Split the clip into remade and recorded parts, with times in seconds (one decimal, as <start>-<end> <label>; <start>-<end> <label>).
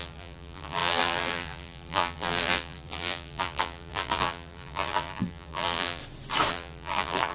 0.0-6.0 remade; 6.0-6.5 recorded; 6.5-7.3 remade